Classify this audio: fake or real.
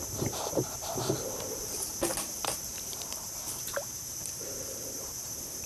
fake